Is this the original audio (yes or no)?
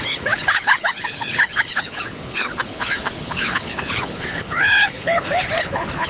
no